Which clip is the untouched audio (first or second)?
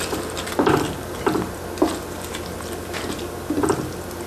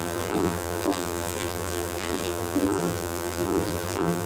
first